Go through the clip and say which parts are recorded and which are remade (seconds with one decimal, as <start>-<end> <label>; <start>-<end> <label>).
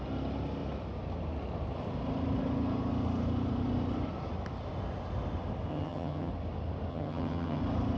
0.0-5.7 recorded; 5.7-6.3 remade; 6.3-6.9 recorded; 6.9-7.6 remade; 7.6-8.0 recorded